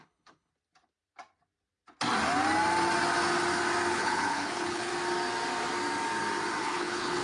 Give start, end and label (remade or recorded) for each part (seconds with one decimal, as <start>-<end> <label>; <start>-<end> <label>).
0.0-0.5 remade; 0.5-3.9 recorded; 3.9-4.9 remade; 4.9-6.6 recorded; 6.6-7.2 remade